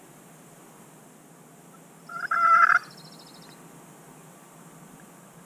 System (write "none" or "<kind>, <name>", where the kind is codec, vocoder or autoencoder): none